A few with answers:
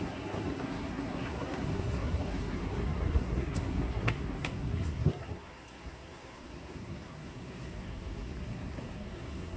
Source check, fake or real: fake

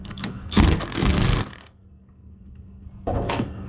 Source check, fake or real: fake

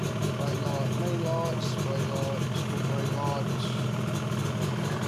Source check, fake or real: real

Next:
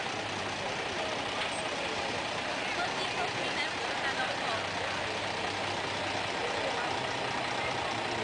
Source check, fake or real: real